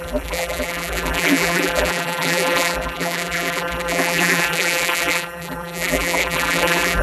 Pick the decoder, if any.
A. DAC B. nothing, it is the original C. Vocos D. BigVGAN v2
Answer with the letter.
D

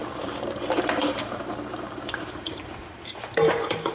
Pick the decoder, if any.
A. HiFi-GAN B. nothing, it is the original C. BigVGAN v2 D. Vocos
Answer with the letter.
C